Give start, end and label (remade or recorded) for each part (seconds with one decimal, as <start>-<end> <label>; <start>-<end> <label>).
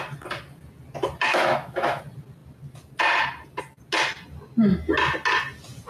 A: 0.0-1.3 recorded; 1.3-2.0 remade; 2.0-5.9 recorded